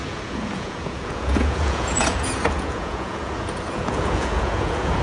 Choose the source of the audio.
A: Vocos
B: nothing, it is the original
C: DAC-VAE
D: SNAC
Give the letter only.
A